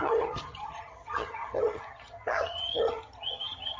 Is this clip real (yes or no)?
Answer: no